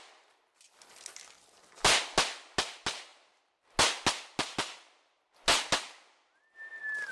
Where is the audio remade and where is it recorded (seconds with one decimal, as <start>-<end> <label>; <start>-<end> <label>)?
0.0-7.1 recorded